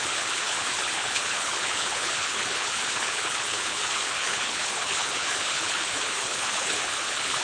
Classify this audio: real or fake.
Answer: fake